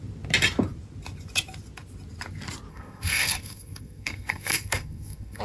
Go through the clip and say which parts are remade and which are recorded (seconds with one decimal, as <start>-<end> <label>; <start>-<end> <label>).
0.0-2.7 recorded; 2.7-5.4 remade